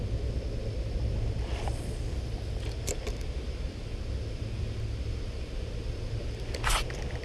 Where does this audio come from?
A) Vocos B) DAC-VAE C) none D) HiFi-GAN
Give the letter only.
C